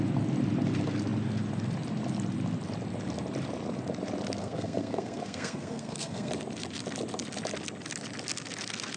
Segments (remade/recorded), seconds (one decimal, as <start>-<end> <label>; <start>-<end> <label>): 0.0-4.4 recorded; 4.4-6.3 remade; 6.3-9.0 recorded